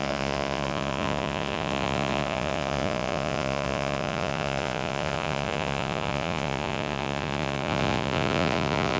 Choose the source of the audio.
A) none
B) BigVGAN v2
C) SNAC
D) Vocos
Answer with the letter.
D